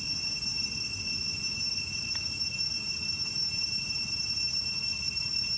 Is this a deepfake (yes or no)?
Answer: no